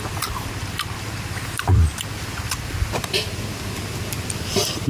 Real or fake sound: fake